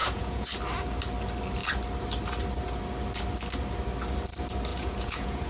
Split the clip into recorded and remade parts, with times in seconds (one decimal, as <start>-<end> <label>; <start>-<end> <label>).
0.0-0.5 remade; 0.5-4.7 recorded; 4.7-5.5 remade

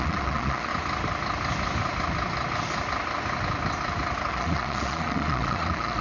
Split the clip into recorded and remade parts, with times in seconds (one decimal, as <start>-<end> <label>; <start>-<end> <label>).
0.0-0.7 remade; 0.7-4.3 recorded; 4.3-6.0 remade

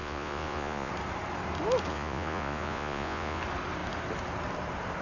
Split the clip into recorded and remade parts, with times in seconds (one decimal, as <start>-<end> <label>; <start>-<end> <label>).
0.0-0.9 remade; 0.9-1.9 recorded; 1.9-3.4 remade; 3.4-5.0 recorded

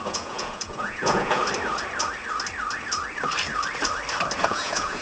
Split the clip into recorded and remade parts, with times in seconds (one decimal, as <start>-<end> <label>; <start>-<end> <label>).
0.0-1.4 remade; 1.4-4.4 recorded; 4.4-5.0 remade

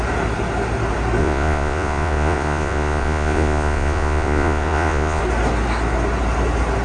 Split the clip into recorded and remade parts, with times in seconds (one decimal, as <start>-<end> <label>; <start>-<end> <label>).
0.0-1.2 recorded; 1.2-5.2 remade; 5.2-6.8 recorded

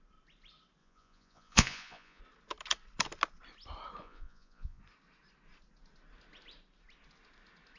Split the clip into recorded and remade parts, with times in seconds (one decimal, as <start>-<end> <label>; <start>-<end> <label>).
0.0-0.8 recorded; 0.8-2.2 remade; 2.2-4.0 recorded; 4.0-4.8 remade; 4.8-7.8 recorded

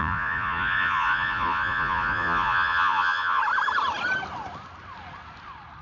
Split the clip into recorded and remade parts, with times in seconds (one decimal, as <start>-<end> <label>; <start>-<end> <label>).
0.0-3.4 remade; 3.4-5.8 recorded